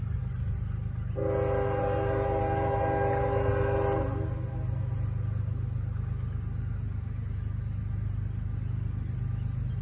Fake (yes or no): no